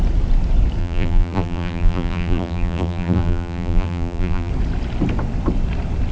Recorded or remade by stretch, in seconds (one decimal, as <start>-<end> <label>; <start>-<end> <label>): 0.0-0.8 recorded; 0.8-4.5 remade; 4.5-6.1 recorded